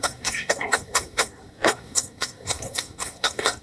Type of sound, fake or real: fake